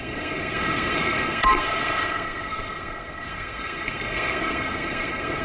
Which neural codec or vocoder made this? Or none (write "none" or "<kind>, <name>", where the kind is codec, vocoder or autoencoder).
codec, SNAC